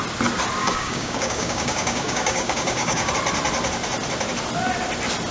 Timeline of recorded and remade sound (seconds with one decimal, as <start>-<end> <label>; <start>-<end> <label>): 0.0-0.6 recorded; 0.6-3.1 remade; 3.1-5.3 recorded